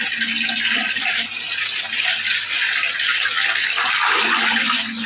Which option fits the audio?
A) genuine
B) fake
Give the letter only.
A